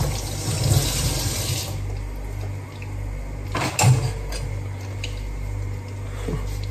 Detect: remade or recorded recorded